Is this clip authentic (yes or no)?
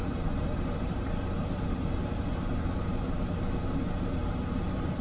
no